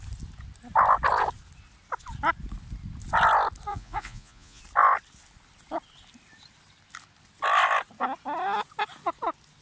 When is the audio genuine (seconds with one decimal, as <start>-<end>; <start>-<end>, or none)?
0.0-3.7; 4.6-9.6